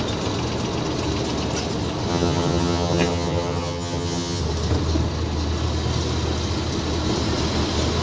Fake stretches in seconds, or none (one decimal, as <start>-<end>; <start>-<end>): 2.1-4.4